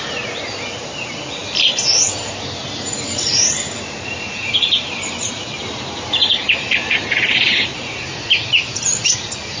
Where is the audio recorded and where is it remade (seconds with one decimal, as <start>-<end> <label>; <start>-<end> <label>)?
0.0-9.6 remade